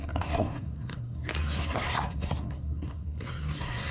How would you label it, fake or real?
fake